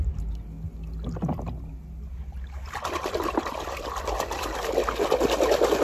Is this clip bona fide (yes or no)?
yes